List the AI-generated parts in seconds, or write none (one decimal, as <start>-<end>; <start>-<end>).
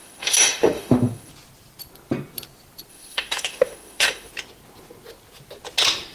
0.0-1.3; 2.9-4.3